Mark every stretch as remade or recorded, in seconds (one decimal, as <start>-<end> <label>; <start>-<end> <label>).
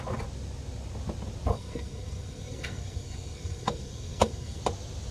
0.0-1.5 recorded; 1.5-4.6 remade; 4.6-5.1 recorded